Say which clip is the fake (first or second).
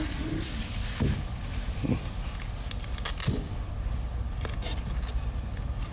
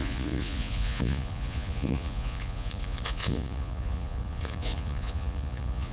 second